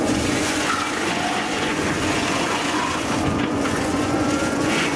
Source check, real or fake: fake